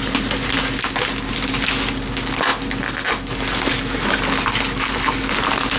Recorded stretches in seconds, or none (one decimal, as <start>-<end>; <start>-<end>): 0.0-5.8